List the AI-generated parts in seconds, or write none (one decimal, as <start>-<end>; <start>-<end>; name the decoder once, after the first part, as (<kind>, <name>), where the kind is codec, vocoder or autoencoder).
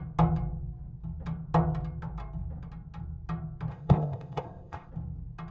3.7-4.9 (codec, ZipCodec)